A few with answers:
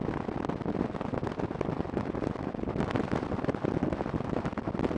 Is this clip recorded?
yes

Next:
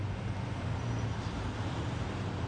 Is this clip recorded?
yes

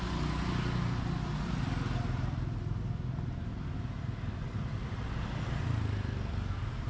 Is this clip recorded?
yes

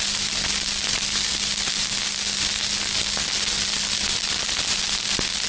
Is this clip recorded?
yes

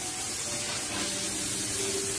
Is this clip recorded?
yes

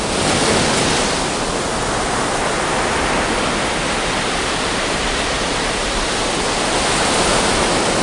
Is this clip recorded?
yes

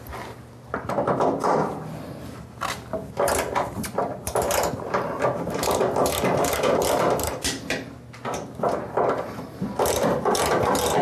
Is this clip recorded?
yes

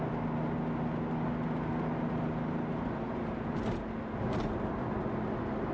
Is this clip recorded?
yes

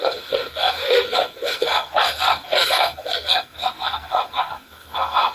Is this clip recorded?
no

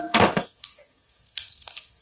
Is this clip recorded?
no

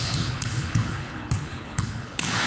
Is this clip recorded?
no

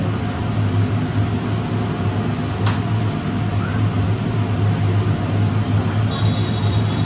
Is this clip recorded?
yes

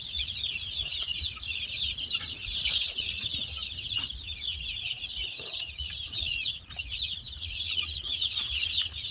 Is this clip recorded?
no